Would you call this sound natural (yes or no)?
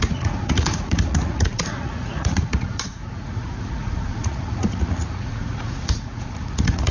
no